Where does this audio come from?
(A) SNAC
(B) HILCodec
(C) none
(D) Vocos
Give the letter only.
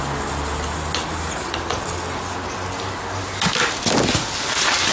C